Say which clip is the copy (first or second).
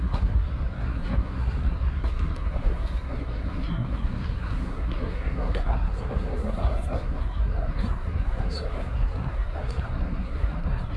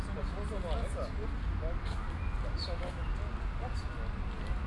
first